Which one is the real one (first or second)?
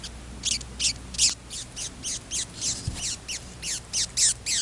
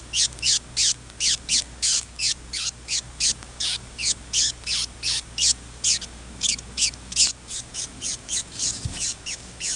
first